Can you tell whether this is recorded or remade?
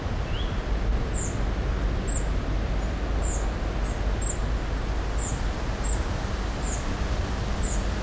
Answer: recorded